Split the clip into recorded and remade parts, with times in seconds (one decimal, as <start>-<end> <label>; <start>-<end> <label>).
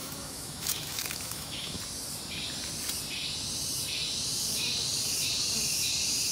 0.0-1.8 remade; 1.8-6.3 recorded